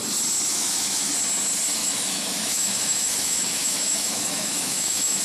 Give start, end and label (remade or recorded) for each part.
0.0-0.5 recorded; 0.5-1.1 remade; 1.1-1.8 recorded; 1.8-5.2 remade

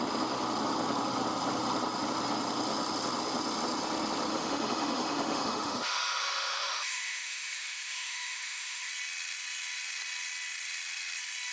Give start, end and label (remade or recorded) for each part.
0.0-4.3 recorded; 4.3-8.9 remade; 8.9-11.5 recorded

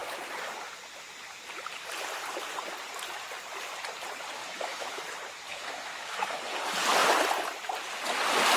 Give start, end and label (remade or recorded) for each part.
0.0-4.4 recorded; 4.4-5.0 remade; 5.0-5.5 recorded; 5.5-6.4 remade; 6.4-8.6 recorded

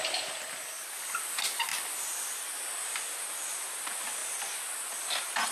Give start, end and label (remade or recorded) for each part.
0.0-5.5 recorded

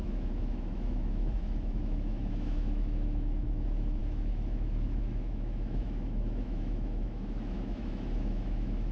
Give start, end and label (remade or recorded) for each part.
0.0-8.9 remade